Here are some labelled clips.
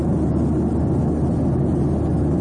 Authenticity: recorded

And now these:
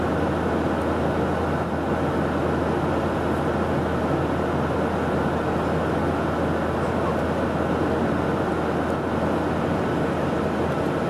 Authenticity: recorded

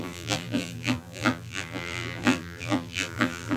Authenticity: remade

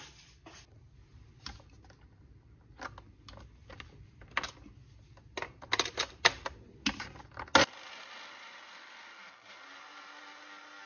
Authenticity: recorded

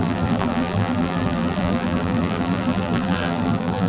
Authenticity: remade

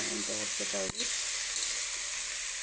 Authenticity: recorded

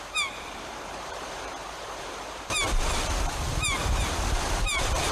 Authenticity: remade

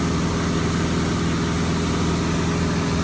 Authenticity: recorded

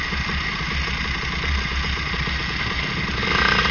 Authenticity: remade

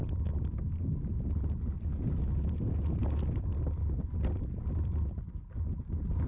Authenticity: recorded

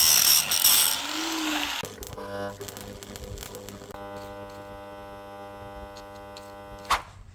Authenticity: recorded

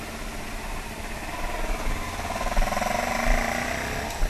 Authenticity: recorded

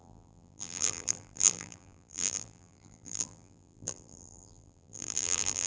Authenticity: remade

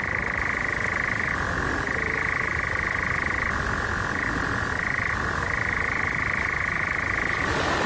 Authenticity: recorded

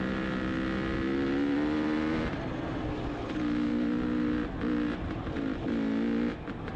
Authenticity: recorded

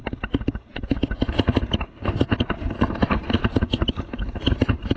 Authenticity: recorded